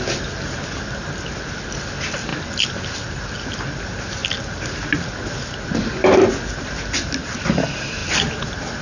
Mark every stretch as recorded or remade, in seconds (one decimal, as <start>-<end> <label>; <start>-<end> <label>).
0.0-8.8 recorded